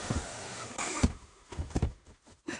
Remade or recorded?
remade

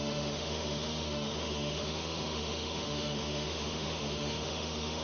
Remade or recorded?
remade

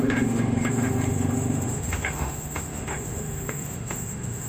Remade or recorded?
remade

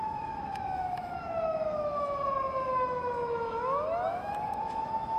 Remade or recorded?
remade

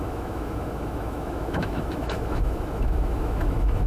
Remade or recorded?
remade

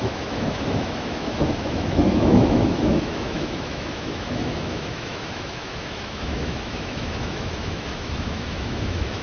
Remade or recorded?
remade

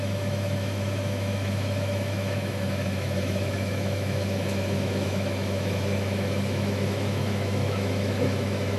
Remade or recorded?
remade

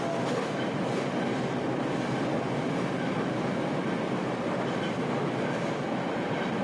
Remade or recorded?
recorded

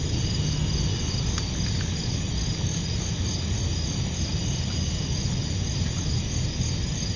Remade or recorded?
recorded